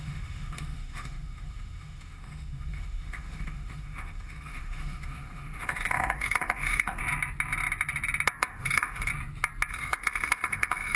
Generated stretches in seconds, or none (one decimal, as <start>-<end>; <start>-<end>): 0.0-7.0; 8.4-9.1; 9.7-11.0